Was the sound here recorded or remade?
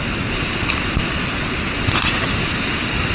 recorded